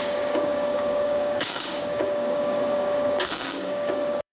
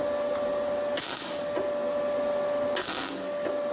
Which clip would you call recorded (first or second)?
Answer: second